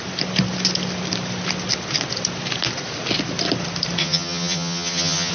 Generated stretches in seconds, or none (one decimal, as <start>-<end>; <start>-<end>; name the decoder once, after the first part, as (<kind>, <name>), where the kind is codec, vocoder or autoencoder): 4.0-5.3 (vocoder, HiFi-GAN)